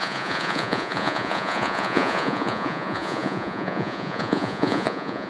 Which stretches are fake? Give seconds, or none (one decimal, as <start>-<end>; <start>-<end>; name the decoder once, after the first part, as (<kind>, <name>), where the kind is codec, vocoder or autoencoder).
0.0-5.3 (vocoder, Vocos)